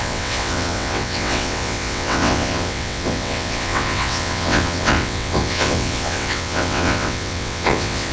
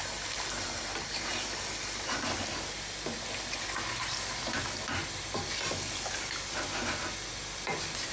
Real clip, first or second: second